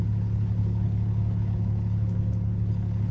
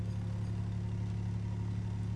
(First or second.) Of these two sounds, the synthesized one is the first